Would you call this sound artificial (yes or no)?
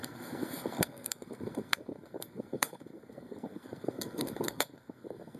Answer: yes